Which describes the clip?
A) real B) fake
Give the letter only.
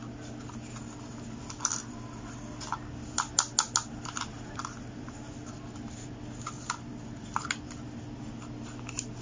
A